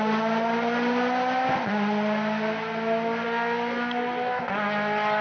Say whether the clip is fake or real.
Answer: real